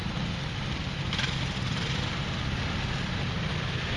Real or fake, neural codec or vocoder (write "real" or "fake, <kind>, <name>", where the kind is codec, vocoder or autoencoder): real